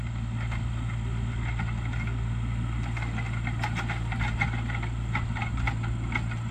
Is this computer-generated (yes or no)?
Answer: no